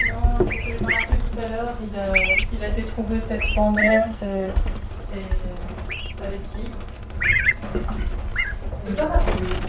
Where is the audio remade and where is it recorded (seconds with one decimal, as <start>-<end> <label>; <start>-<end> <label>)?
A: 0.0-3.8 recorded; 3.8-4.9 remade; 4.9-9.7 recorded